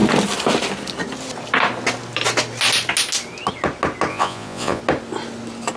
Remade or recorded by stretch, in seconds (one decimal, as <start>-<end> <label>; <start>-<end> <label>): 0.0-4.1 recorded; 4.1-4.8 remade; 4.8-5.8 recorded